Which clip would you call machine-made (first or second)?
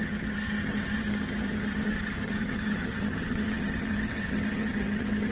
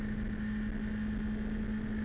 first